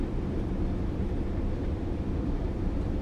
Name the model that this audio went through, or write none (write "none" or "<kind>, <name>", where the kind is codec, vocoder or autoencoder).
vocoder, BigVGAN v2